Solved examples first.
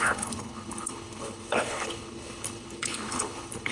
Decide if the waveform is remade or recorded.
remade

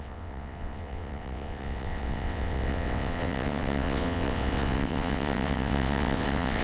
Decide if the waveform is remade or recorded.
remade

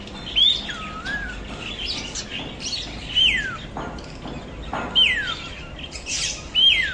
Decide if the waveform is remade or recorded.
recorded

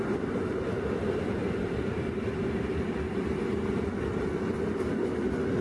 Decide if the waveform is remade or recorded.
recorded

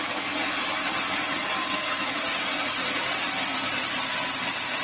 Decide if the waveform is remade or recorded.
recorded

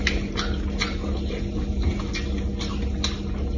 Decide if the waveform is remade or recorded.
recorded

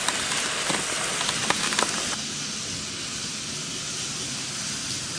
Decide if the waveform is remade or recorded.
recorded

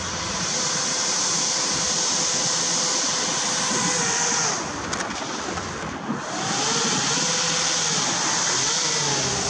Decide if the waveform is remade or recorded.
recorded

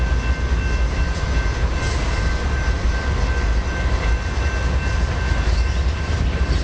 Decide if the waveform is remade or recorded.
recorded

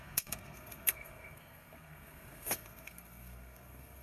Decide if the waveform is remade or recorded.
remade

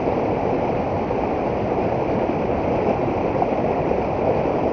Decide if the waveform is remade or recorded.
recorded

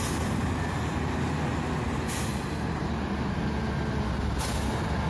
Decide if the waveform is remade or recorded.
recorded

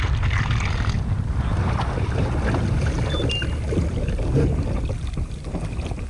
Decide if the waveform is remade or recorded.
recorded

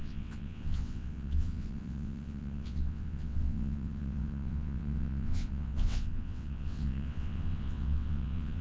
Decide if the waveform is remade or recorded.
remade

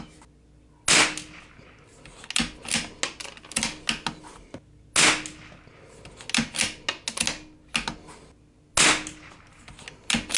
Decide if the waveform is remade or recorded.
recorded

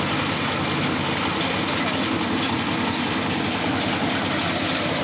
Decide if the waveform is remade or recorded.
recorded